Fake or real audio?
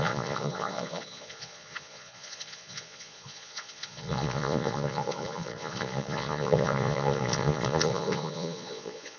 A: fake